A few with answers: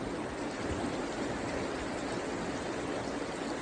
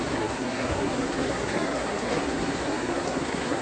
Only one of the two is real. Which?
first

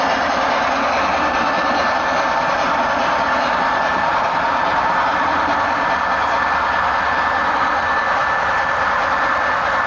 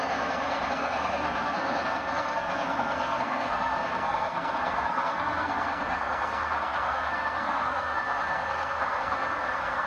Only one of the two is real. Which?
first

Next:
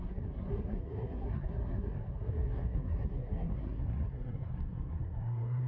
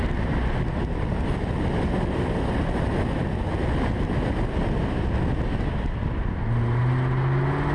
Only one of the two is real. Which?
second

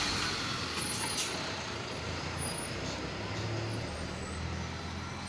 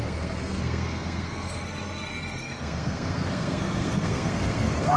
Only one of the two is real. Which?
first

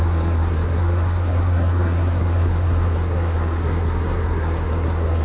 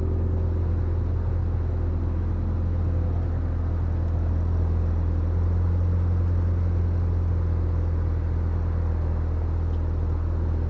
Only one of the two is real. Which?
second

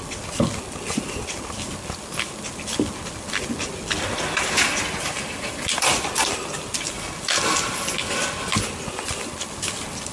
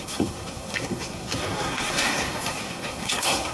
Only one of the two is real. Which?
first